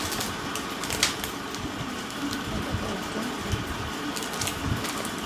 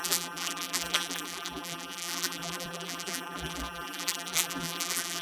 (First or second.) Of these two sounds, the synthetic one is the second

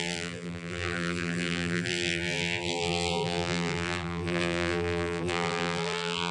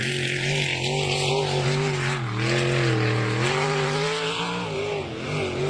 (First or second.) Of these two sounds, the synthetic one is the first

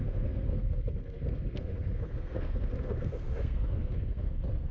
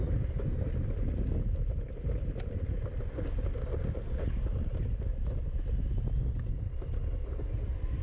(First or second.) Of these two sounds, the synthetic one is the first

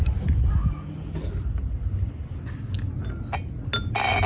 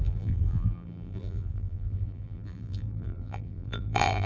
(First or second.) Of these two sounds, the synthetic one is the second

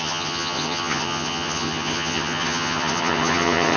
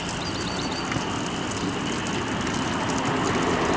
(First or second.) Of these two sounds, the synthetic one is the first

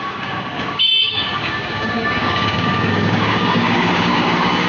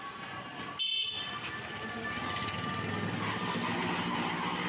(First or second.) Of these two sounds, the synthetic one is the first